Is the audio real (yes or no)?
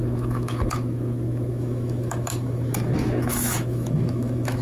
no